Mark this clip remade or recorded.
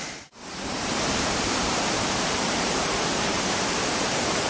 remade